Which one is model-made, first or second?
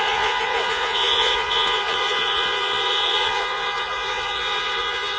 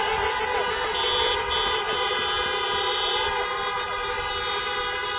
first